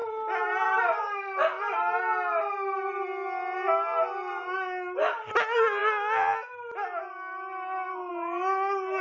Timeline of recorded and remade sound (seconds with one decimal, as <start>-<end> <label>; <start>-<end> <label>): 0.0-2.0 remade; 2.0-9.0 recorded